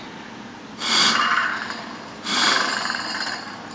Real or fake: real